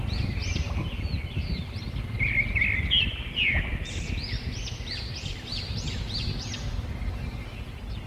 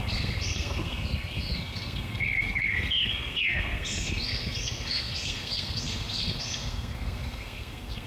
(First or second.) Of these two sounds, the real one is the first